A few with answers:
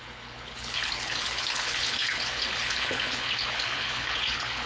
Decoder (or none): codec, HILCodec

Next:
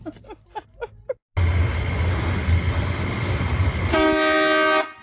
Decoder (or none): none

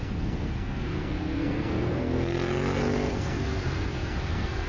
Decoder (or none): codec, SNAC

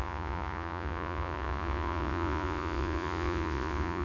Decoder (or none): vocoder, Vocos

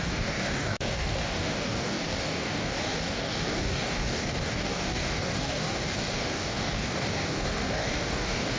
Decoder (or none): codec, DAC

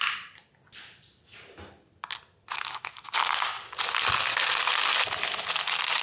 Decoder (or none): none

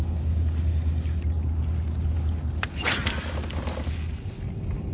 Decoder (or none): none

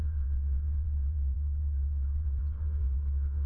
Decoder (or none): vocoder, WaveNeXt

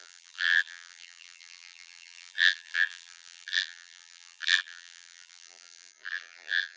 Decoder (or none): vocoder, BigVGAN v2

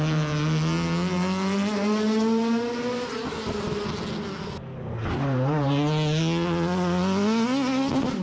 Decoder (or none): none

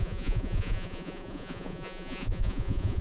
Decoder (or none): vocoder, Vocos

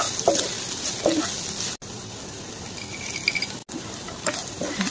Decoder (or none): none